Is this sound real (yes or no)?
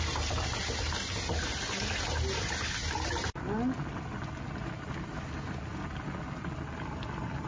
yes